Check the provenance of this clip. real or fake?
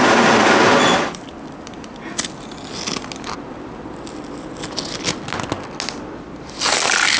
real